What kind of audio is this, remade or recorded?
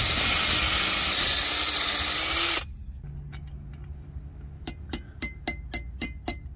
recorded